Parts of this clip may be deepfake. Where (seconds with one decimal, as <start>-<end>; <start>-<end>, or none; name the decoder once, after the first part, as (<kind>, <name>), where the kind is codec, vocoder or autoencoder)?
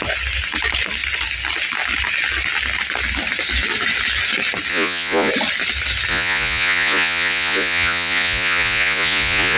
4.7-5.3 (vocoder, Vocos); 6.1-9.6